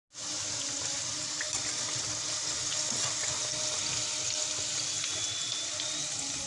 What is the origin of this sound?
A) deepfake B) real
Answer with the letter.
B